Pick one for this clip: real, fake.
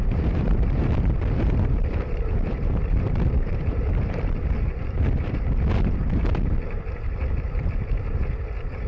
fake